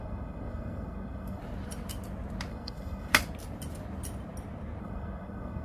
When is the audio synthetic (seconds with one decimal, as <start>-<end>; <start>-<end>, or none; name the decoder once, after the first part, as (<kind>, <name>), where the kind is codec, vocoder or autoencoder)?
0.0-1.4 (codec, SNAC); 2.5-3.1; 4.8-5.6